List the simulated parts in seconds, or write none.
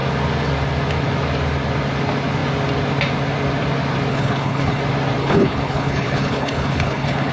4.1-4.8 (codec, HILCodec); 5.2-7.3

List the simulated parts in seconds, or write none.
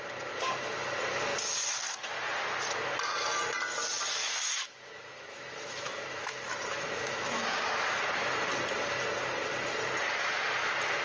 4.2-7.9 (autoencoder, DAC-VAE)